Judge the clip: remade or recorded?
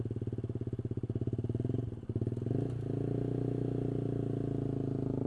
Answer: recorded